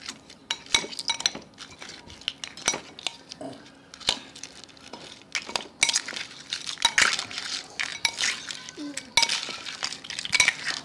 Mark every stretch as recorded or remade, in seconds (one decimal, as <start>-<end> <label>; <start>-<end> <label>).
0.0-3.1 recorded; 3.1-3.7 remade; 3.7-7.9 recorded; 7.9-9.1 remade; 9.1-10.8 recorded